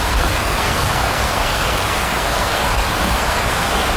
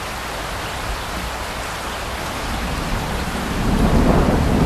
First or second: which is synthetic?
first